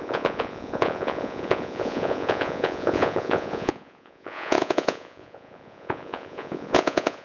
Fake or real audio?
fake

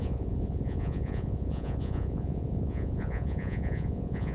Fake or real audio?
fake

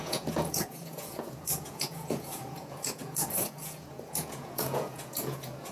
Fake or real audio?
fake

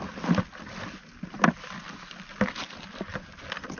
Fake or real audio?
real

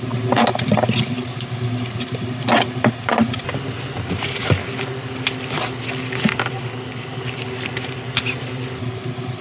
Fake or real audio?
real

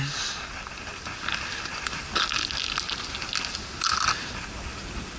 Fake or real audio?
real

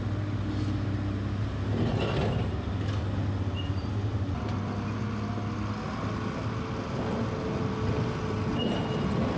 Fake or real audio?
real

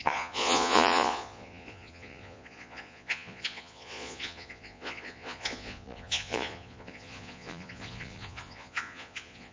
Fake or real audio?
fake